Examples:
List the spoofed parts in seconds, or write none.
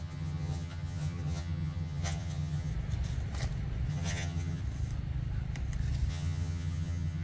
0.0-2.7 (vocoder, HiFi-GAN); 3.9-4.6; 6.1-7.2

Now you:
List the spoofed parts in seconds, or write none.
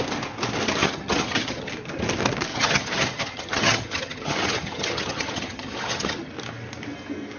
0.8-1.7 (vocoder, HiFi-GAN); 2.5-6.3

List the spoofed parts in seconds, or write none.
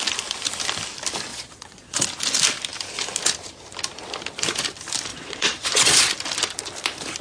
1.3-2.1 (vocoder, Vocos); 5.1-6.1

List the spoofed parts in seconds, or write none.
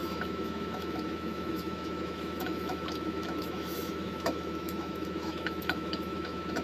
0.0-6.6 (autoencoder, DAC-VAE)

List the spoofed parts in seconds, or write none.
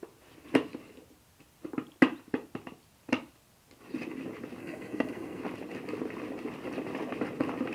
4.6-5.4 (codec, SNAC)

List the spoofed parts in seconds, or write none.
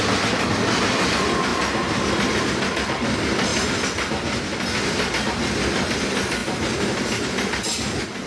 1.5-2.1 (vocoder, BigVGAN v2); 6.4-8.3